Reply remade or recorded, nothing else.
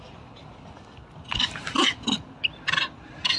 recorded